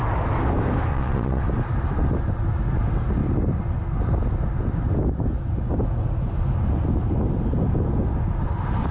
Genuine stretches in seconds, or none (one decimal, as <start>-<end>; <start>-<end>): 0.0-0.9; 1.4-8.9